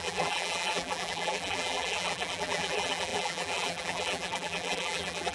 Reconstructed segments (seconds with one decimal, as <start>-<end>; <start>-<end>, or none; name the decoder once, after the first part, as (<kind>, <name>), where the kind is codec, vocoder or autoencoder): 0.0-5.3 (vocoder, BigVGAN v2)

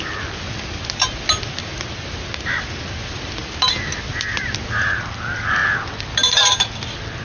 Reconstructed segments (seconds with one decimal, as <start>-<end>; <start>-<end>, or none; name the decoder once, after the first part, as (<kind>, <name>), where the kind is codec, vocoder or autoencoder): none

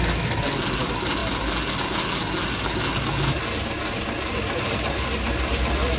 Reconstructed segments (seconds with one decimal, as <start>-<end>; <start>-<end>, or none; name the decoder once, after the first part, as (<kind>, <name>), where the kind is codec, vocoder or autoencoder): none

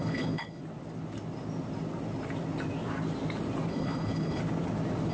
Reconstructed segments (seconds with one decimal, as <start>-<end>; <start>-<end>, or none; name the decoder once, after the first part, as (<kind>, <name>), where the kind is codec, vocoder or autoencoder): 0.0-0.6 (codec, HILCodec); 3.7-4.4

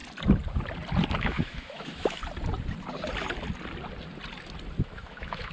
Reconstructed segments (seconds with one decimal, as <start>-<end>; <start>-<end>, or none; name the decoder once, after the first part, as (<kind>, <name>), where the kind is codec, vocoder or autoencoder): 1.2-2.2 (autoencoder, DAC-VAE); 4.8-5.5

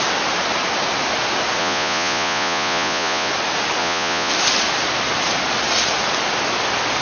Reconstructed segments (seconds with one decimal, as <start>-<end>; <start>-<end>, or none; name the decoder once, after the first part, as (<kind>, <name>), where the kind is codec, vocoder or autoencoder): 1.6-3.3 (vocoder, Vocos); 3.8-4.3